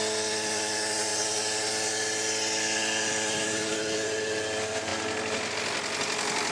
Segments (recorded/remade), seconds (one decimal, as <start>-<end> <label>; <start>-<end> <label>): 0.0-6.5 recorded